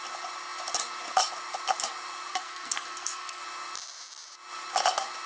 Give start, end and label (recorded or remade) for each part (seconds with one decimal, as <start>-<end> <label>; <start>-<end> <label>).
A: 0.0-2.3 recorded; 2.3-3.4 remade; 3.4-5.3 recorded